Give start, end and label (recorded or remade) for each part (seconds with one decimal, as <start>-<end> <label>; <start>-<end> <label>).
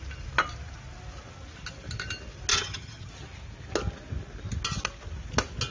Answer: 0.0-2.5 recorded; 2.5-3.1 remade; 3.1-5.7 recorded